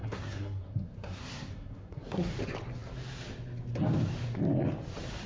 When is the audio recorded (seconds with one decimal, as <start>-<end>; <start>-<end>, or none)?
2.4-5.3